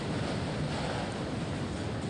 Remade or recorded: recorded